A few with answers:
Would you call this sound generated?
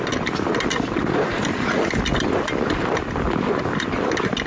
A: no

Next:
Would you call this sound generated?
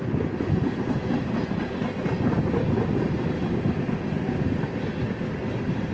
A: no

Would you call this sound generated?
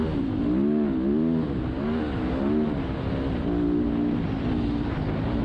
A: no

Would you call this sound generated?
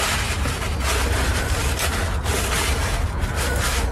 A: no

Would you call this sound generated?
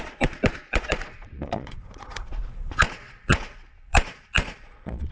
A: yes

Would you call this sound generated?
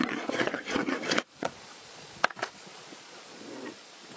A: yes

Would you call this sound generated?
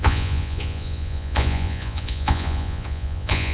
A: yes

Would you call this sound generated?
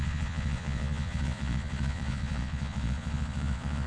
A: yes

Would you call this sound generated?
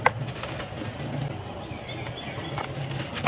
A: no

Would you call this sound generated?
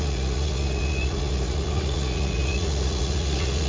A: yes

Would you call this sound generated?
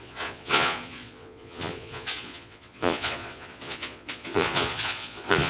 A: yes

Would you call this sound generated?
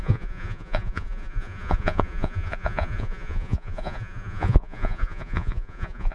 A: yes